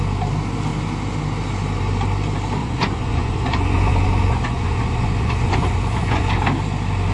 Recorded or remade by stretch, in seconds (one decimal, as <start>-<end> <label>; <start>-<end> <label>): 0.0-2.6 recorded; 2.6-6.4 remade; 6.4-7.1 recorded